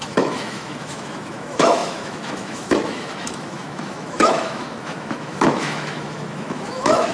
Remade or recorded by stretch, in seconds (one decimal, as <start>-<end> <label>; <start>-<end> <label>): 0.0-7.1 remade